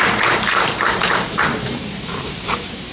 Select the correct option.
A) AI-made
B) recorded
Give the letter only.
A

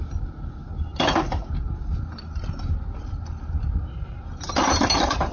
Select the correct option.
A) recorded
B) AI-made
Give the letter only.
A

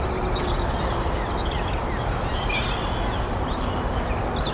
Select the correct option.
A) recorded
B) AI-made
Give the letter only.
A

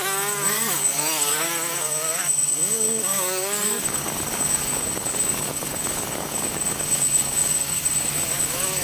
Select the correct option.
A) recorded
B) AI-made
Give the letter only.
B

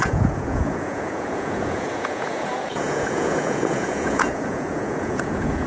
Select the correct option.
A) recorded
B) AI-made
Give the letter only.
B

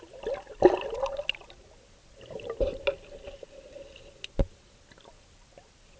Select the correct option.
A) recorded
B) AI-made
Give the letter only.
A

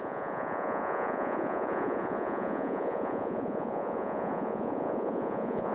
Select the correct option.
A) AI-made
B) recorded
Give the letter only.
A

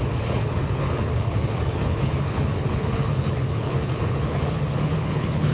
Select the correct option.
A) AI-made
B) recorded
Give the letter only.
A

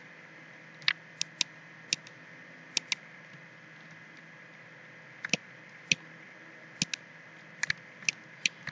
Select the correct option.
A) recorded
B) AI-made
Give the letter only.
A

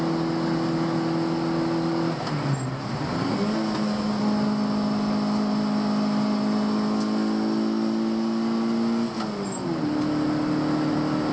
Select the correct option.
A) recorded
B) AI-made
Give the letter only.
A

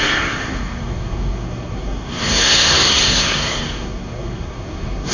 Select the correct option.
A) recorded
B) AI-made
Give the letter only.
B